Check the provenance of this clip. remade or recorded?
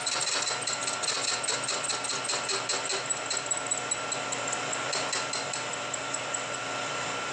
recorded